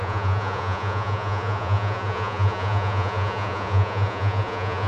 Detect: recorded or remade remade